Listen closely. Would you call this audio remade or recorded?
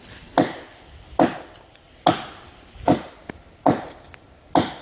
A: recorded